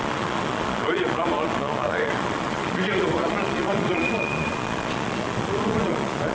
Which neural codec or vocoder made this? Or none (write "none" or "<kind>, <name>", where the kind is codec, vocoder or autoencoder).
vocoder, Vocos